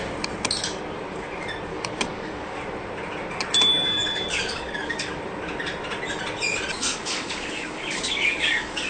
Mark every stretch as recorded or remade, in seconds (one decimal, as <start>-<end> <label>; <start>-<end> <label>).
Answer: 0.0-1.7 recorded; 1.7-2.6 remade; 2.6-3.7 recorded; 3.7-5.2 remade; 5.2-6.9 recorded; 6.9-8.9 remade